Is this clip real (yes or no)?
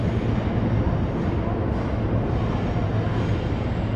yes